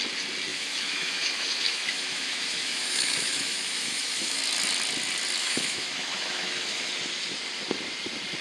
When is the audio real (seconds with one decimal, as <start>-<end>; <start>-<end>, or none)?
0.0-0.5; 4.4-5.4; 6.9-8.4